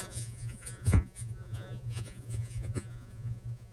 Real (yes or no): no